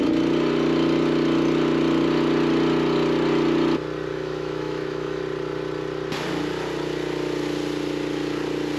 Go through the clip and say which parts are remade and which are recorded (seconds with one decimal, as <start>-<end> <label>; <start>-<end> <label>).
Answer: 0.0-4.1 recorded; 4.1-5.2 remade; 5.2-8.8 recorded

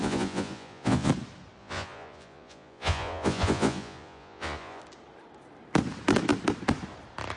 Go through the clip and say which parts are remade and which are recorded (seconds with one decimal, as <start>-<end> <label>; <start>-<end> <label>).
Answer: 0.0-1.1 remade; 1.1-1.6 recorded; 1.6-4.8 remade; 4.8-7.4 recorded

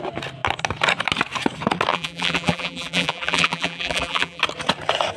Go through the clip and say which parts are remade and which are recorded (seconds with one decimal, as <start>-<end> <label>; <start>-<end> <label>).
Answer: 0.0-1.9 recorded; 1.9-4.4 remade; 4.4-5.2 recorded

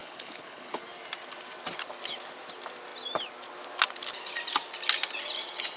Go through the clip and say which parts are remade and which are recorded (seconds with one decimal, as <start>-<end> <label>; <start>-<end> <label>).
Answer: 0.0-0.8 remade; 0.8-5.8 recorded